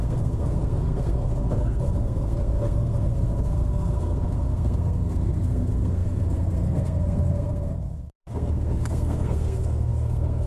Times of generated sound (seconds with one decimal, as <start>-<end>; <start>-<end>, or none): 0.0-10.5